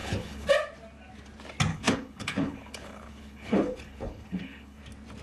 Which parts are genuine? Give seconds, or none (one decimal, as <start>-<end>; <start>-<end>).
0.5-1.7; 4.8-5.2